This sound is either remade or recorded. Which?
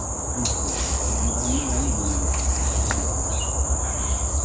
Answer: recorded